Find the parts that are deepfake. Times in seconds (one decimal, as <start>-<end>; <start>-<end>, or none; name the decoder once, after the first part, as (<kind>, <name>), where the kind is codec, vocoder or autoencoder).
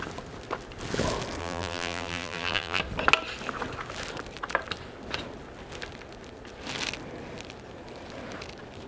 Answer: 1.4-2.8 (vocoder, BigVGAN v2)